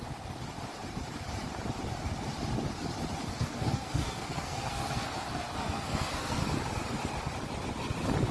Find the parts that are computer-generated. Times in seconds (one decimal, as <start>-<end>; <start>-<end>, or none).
3.3-6.4